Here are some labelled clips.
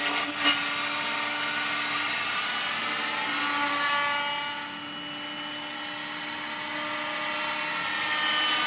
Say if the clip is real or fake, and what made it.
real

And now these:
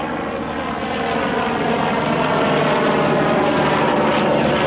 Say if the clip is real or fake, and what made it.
real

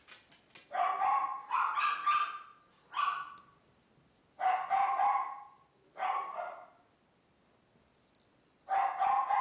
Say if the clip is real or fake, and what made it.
real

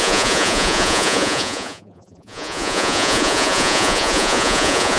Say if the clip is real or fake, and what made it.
fake, vocoder, Vocos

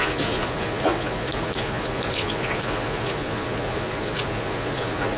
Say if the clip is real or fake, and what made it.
fake, vocoder, Vocos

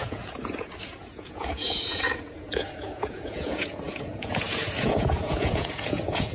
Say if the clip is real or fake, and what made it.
fake, vocoder, Vocos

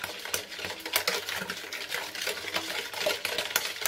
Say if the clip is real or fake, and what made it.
real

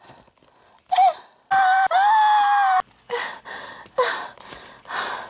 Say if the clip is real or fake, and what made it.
real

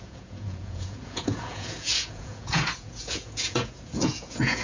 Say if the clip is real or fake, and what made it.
fake, vocoder, Vocos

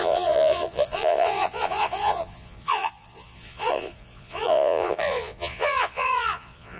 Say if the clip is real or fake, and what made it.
fake, vocoder, Vocos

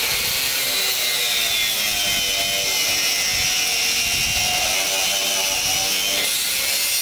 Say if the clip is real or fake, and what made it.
real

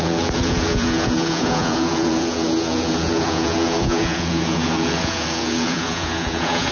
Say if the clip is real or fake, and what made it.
fake, vocoder, Vocos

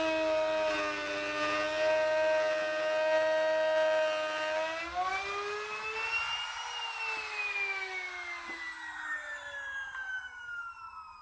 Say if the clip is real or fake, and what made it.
real